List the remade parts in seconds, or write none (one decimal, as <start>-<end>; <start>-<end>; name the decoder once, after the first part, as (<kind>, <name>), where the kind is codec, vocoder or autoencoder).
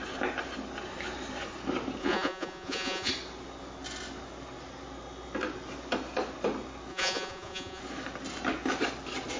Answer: 2.0-3.1 (vocoder, Vocos); 6.9-7.8